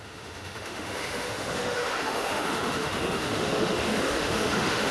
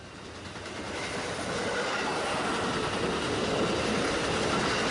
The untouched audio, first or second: second